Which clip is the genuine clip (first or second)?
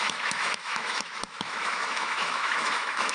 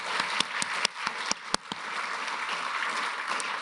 second